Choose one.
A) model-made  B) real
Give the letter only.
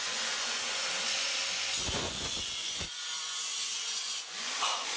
A